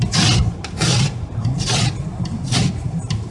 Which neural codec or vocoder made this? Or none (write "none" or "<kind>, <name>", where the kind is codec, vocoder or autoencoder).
none